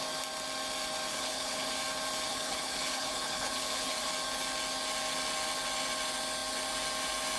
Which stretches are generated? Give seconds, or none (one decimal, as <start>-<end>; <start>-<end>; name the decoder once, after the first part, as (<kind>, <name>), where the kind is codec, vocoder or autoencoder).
1.1-1.7 (codec, HILCodec); 2.3-4.1

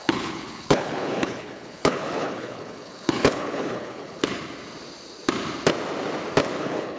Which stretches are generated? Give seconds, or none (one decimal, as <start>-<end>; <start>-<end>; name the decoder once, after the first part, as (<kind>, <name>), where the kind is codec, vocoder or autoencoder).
0.0-4.3 (codec, HILCodec); 6.6-7.0

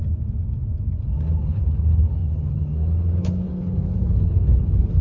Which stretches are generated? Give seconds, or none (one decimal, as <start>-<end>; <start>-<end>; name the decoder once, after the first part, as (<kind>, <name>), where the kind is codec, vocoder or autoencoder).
1.4-5.0 (codec, HILCodec)

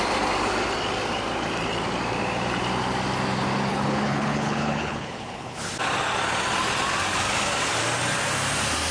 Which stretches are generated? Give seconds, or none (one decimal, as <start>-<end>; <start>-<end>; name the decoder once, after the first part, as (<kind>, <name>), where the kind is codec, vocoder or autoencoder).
3.7-5.7 (codec, HILCodec)

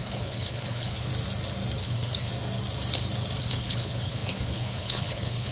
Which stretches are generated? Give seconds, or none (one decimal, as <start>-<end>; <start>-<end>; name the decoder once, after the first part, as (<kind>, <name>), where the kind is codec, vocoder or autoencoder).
0.0-1.1 (codec, HILCodec); 1.8-2.3; 3.4-5.5